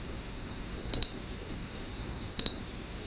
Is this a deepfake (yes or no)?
yes